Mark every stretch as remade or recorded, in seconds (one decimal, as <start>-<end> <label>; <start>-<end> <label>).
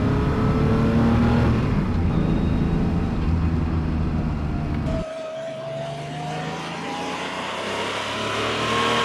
0.0-9.0 recorded